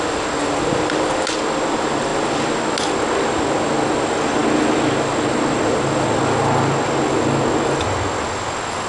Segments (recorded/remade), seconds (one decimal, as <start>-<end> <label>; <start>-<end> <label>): 0.0-8.9 recorded